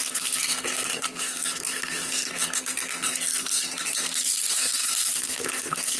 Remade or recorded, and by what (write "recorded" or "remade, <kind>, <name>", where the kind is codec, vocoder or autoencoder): remade, codec, SNAC